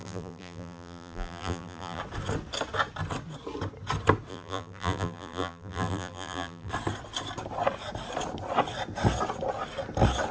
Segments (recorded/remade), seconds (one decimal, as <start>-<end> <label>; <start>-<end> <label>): 0.0-2.0 remade; 2.0-4.3 recorded; 4.3-6.7 remade; 6.7-10.3 recorded